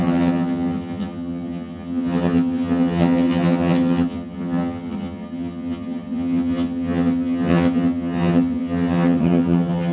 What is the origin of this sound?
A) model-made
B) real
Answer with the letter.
A